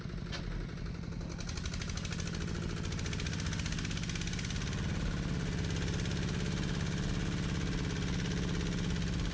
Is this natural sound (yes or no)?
yes